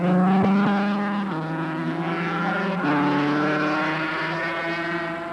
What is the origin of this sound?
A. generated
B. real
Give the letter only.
B